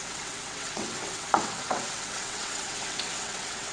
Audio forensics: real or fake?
fake